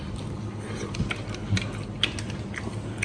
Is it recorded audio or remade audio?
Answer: recorded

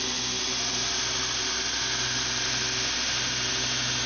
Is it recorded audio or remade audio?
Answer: recorded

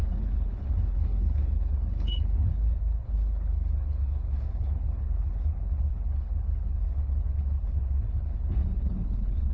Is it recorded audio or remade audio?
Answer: remade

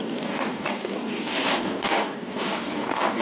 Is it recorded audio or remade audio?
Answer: remade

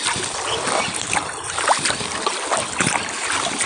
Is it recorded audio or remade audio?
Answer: recorded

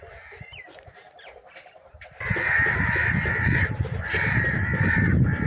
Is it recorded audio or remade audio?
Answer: remade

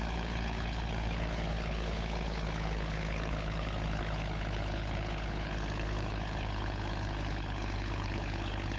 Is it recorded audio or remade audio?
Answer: remade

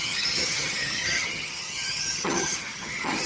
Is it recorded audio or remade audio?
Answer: remade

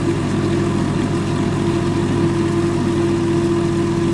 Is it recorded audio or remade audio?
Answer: recorded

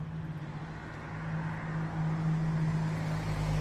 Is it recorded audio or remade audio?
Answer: recorded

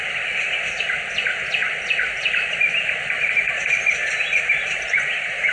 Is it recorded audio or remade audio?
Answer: recorded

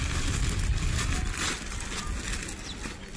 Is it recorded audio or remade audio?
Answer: recorded